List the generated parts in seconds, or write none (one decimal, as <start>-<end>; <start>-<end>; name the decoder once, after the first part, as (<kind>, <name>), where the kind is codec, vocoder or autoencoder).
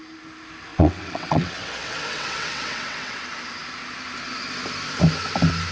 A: 0.7-3.2 (vocoder, WaveNeXt)